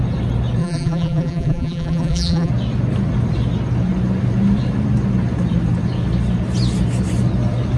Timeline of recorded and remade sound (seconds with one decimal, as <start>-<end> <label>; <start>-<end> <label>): 0.0-0.6 recorded; 0.6-2.5 remade; 2.5-7.8 recorded